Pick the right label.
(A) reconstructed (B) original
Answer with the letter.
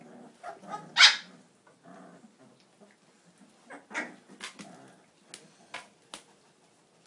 B